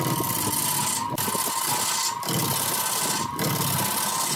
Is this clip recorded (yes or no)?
yes